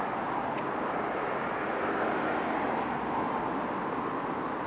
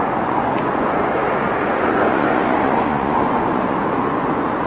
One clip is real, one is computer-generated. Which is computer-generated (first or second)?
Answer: second